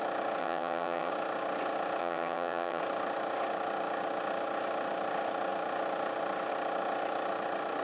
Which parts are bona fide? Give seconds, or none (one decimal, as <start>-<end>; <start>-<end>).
0.0-0.4; 1.1-2.0; 2.8-7.8